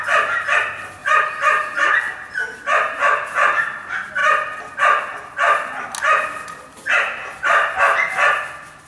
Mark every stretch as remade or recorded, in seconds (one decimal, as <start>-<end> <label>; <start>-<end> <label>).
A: 0.0-8.9 recorded